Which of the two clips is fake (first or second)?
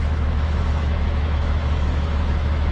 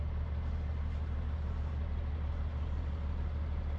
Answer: first